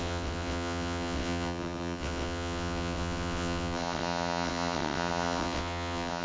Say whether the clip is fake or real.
fake